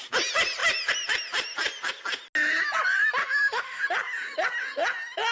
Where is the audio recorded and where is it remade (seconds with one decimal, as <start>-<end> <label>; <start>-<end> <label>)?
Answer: 0.0-3.2 recorded; 3.2-3.8 remade; 3.8-5.3 recorded